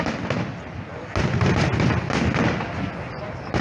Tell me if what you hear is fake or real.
real